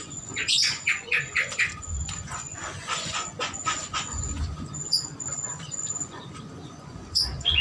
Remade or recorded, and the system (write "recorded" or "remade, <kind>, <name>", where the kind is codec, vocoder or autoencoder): remade, vocoder, Vocos